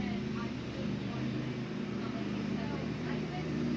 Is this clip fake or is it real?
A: fake